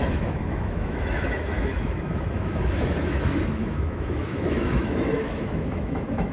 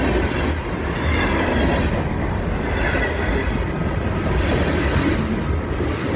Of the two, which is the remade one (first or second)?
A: first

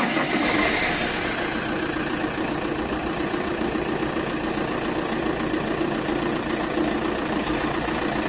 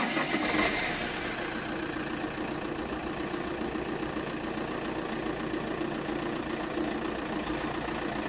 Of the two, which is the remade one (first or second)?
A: first